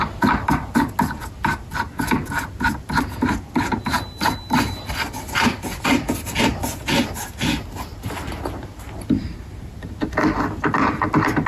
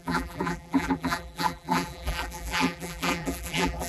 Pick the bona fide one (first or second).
first